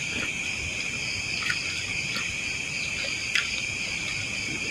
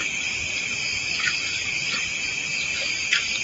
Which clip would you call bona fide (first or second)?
first